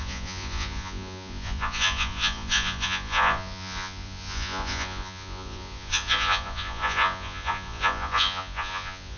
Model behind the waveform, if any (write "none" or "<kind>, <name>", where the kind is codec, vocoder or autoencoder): vocoder, Vocos